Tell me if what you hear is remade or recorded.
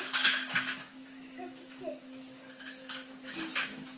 remade